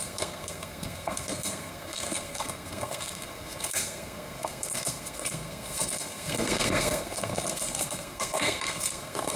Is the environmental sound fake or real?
fake